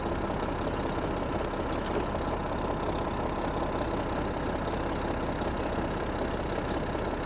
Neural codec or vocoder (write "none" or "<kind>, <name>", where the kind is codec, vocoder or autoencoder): none